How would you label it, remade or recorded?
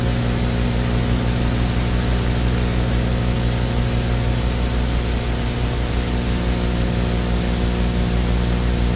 recorded